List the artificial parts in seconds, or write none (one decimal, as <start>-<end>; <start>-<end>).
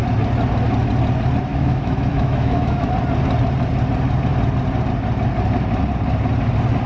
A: 1.5-2.9